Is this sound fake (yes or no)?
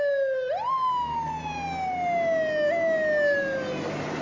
no